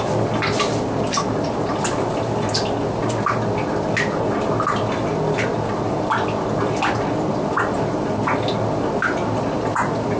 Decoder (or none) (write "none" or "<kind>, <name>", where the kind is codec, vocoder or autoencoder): none